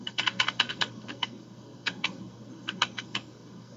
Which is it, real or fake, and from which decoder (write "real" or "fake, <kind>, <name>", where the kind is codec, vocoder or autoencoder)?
fake, codec, SNAC